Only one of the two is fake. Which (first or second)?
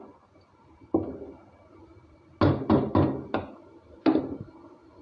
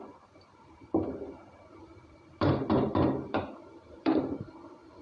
second